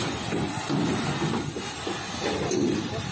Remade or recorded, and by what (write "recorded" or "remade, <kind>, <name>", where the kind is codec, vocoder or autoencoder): recorded